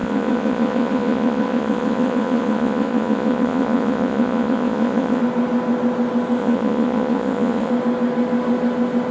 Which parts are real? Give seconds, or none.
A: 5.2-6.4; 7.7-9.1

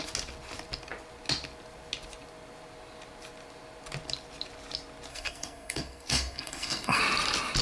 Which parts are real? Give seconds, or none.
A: 0.0-5.1; 7.0-7.6

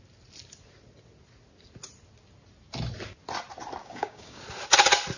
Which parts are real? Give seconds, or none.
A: 0.0-3.8; 4.4-5.2